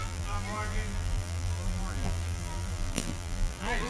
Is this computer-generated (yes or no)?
yes